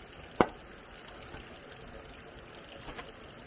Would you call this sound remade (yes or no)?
no